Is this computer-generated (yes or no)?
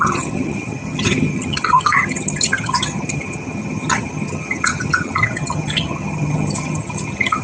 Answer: yes